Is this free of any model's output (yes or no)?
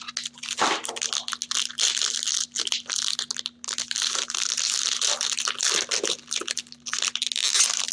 yes